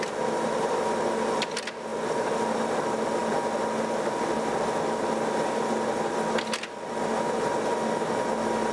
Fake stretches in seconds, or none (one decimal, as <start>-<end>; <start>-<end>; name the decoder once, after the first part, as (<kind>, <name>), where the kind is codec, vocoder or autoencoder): none